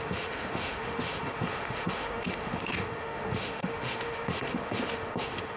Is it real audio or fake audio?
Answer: fake